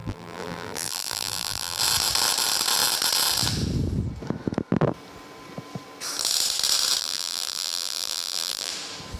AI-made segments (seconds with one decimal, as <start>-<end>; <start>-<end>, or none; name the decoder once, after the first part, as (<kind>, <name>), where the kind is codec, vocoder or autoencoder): 0.0-1.8 (vocoder, BigVGAN v2); 7.0-8.7